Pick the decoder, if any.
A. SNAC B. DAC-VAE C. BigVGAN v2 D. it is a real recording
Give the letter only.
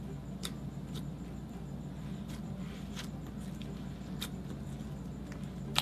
D